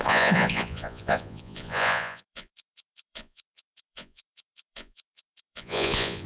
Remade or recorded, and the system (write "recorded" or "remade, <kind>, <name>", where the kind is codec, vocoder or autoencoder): remade, vocoder, Vocos